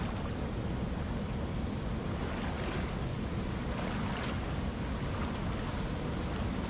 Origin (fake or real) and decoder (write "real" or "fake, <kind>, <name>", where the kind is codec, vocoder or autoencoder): real